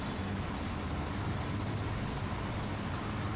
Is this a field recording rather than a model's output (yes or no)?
yes